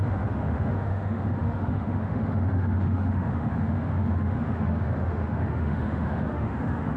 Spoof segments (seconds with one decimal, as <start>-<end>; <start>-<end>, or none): 0.0-7.0